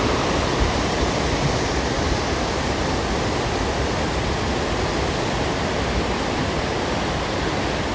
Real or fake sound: real